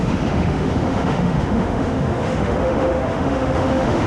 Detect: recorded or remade remade